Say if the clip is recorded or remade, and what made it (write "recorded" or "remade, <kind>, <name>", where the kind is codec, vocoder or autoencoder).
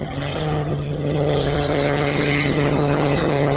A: remade, vocoder, HiFi-GAN